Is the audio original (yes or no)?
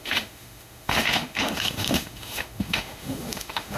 no